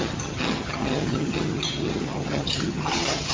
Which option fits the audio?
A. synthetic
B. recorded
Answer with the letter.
A